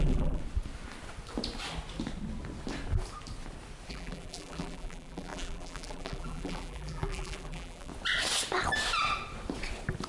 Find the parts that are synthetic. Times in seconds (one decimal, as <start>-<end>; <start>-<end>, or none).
0.0-0.4; 3.9-7.9